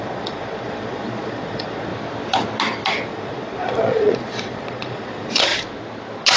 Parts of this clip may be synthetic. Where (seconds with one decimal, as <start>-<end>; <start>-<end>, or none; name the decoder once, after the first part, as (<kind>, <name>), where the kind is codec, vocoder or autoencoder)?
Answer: 0.0-1.9 (vocoder, Vocos); 3.1-5.5